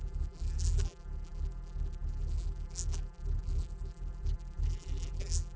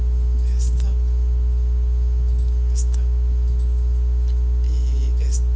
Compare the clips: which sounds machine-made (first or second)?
first